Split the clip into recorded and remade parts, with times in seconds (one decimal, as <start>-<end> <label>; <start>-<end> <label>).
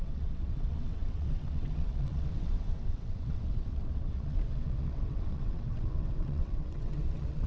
0.0-7.5 remade